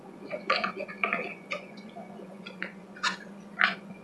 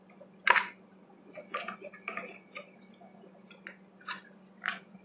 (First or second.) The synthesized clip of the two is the first